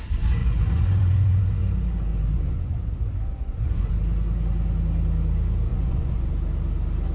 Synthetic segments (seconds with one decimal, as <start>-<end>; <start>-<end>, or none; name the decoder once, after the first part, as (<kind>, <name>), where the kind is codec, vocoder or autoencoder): 0.4-1.6 (vocoder, Vocos); 2.1-3.9; 5.7-6.3